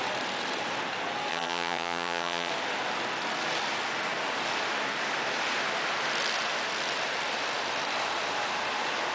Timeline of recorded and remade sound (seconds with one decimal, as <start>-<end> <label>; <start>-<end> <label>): 0.0-1.3 recorded; 1.3-2.5 remade; 2.5-9.1 recorded